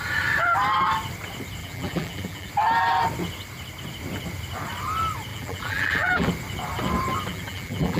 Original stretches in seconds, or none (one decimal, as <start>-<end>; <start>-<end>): 0.0-1.6; 2.5-5.3; 6.3-7.3